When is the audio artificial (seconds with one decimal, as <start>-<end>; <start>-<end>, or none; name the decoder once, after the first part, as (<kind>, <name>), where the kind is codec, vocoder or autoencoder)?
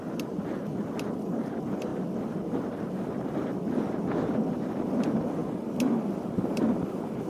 none